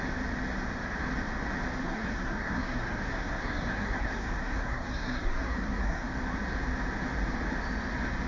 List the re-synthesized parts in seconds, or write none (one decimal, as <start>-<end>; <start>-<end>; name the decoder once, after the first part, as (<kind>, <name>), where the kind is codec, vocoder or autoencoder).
1.8-6.1 (codec, SNAC)